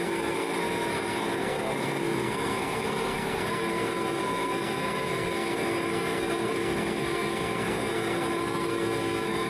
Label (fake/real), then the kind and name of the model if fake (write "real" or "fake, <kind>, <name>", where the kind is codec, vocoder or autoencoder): fake, codec, SNAC